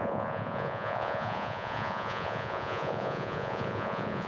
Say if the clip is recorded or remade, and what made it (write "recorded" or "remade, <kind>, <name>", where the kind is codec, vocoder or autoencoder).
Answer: remade, vocoder, Vocos